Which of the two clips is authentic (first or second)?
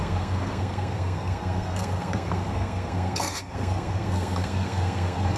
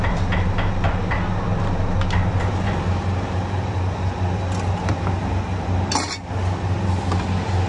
second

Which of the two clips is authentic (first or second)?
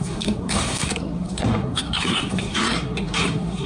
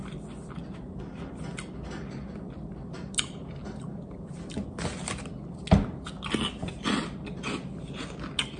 second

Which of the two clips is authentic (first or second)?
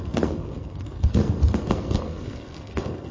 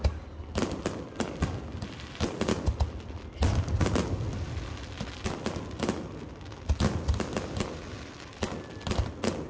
second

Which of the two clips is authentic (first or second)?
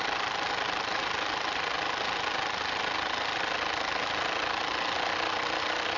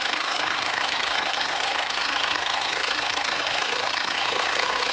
first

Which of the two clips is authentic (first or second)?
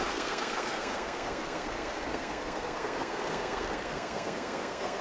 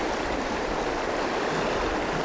second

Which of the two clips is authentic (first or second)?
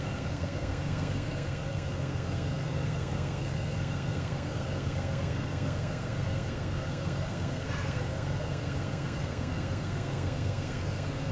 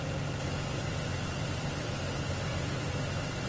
second